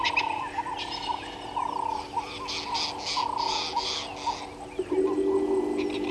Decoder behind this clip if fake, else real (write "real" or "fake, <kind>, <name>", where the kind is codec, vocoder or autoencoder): real